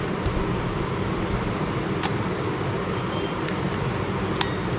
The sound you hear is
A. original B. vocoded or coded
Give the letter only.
A